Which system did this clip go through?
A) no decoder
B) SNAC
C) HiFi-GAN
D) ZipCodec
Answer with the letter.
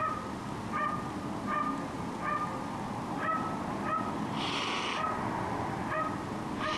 A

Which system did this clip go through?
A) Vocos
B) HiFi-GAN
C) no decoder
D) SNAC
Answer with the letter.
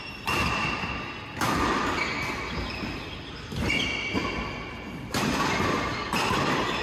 C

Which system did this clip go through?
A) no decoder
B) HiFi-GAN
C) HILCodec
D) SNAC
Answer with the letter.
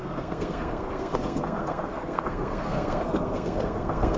D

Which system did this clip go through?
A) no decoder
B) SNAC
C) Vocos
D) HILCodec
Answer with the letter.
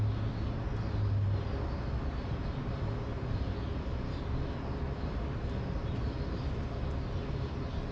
A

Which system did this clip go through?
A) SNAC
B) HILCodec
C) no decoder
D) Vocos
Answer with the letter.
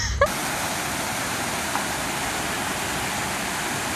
C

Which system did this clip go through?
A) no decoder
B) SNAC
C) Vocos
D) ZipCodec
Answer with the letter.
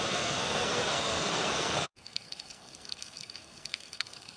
B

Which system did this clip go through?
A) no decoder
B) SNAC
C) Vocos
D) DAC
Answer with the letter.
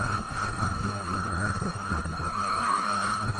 B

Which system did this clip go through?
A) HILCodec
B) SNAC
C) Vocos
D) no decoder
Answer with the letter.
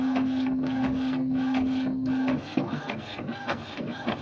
B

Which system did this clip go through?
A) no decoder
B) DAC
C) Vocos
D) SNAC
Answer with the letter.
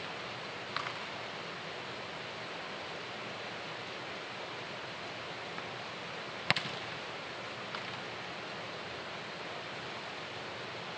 A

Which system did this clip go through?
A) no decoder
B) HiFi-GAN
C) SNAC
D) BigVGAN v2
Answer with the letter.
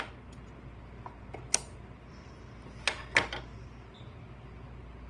A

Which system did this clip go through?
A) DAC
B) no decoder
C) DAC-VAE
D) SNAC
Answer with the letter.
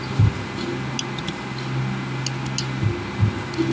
B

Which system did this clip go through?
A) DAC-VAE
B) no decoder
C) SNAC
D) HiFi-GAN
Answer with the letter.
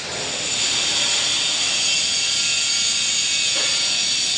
B